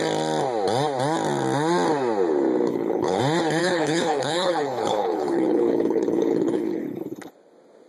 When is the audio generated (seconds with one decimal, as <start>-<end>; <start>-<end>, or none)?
2.7-3.2; 3.6-7.3